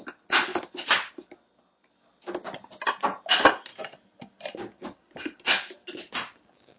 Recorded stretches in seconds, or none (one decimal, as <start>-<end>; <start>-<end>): 0.0-6.8

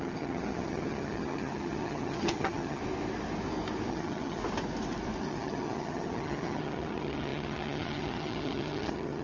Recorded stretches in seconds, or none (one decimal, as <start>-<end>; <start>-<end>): 2.8-3.9; 4.4-5.2

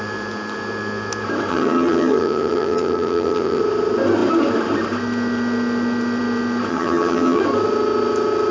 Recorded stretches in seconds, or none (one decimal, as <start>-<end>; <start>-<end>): 0.0-1.5; 3.6-6.7; 7.4-8.5

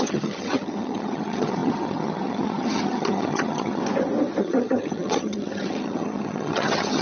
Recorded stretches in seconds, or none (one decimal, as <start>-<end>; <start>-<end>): 3.8-4.4

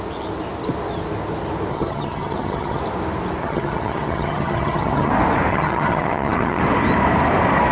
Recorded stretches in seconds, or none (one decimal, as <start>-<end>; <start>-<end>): 0.0-1.7; 2.8-3.4; 5.1-5.5; 6.6-7.7

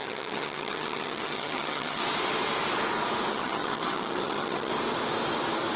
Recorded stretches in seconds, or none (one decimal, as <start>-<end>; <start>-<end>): 2.0-3.3; 4.7-5.8

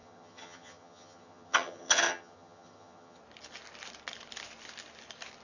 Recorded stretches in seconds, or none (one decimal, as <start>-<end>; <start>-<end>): 3.2-5.4